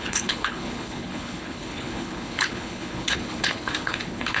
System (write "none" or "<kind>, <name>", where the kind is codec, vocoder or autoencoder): codec, HILCodec